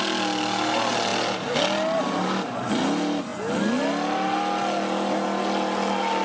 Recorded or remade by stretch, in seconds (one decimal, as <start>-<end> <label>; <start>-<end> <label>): 0.0-6.2 recorded